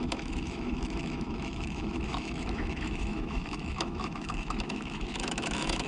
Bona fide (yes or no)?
no